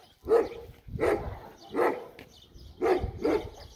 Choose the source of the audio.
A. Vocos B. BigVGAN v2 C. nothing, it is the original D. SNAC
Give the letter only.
C